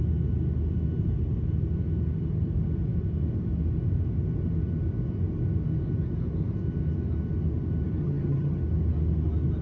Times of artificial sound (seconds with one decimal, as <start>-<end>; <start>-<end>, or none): 8.0-8.6